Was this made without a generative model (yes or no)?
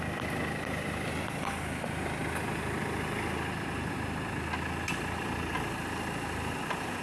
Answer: yes